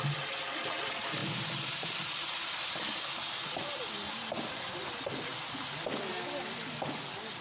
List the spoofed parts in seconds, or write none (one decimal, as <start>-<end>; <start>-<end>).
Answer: none